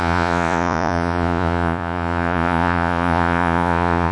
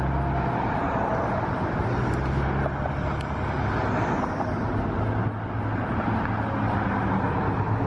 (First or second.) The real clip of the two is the second